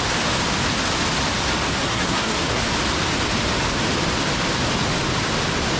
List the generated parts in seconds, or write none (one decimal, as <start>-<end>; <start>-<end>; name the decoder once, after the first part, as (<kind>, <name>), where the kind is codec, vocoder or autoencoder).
1.8-2.6 (codec, SNAC)